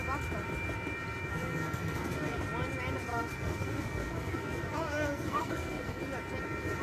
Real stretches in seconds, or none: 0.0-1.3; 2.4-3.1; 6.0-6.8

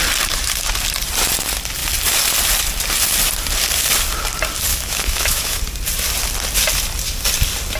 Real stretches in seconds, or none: 0.0-4.7; 5.6-7.8

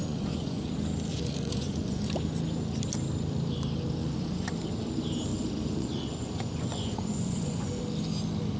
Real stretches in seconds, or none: 0.7-1.1; 2.0-4.0; 4.5-5.3; 7.8-8.6

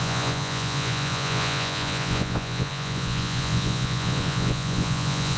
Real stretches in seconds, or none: none

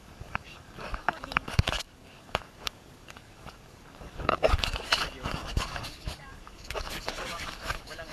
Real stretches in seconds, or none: none

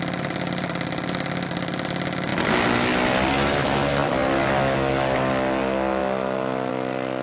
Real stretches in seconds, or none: 0.0-7.2

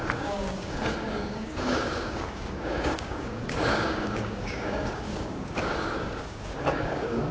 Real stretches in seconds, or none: none